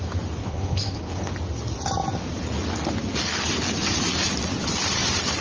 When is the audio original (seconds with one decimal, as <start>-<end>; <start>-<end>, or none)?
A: 0.0-0.4; 1.3-5.4